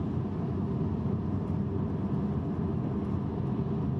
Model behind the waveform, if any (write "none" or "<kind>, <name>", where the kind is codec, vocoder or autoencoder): none